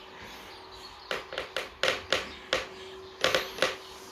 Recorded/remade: recorded